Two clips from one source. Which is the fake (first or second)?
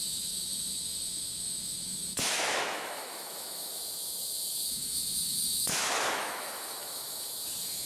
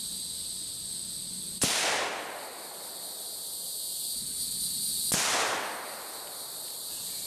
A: first